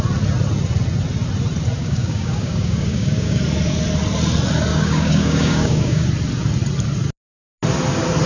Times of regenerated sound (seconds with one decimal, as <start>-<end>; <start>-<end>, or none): 1.8-3.4; 4.7-6.1